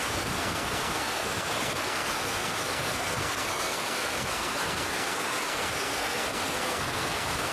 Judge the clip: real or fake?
fake